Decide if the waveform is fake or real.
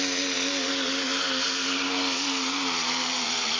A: real